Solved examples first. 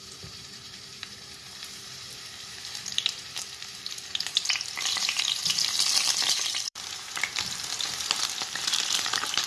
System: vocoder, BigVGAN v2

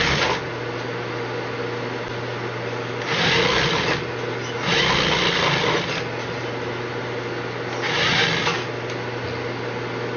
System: none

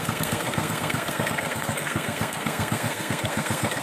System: codec, SNAC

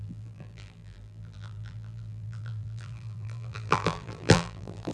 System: vocoder, BigVGAN v2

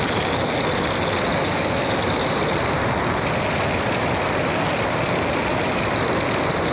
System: none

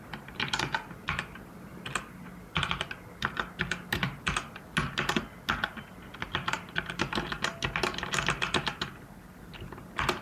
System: none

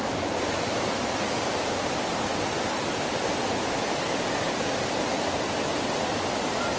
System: none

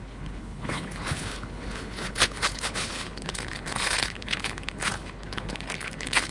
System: codec, HILCodec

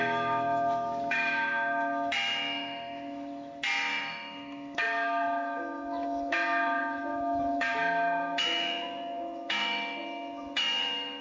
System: autoencoder, DAC-VAE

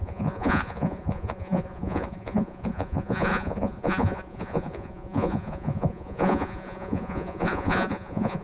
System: vocoder, Vocos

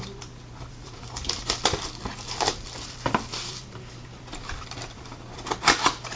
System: vocoder, BigVGAN v2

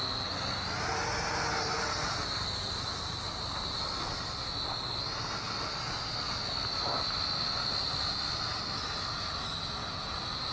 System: none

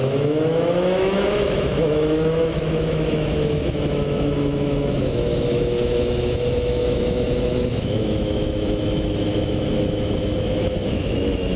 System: autoencoder, DAC-VAE